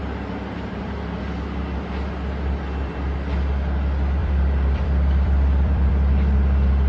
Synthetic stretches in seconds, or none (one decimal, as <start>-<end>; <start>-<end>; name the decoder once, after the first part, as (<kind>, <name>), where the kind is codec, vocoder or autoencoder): 4.2-5.9 (vocoder, BigVGAN v2)